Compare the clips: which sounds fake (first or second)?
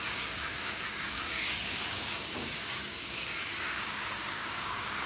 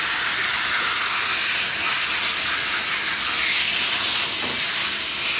first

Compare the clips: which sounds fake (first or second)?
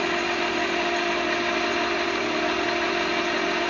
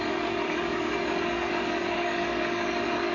second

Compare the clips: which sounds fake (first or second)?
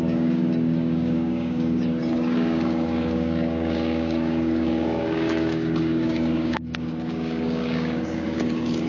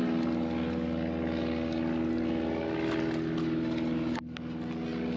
first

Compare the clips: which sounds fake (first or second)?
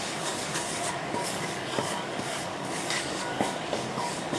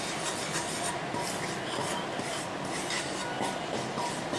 first